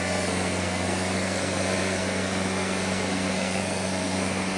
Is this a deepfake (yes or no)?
yes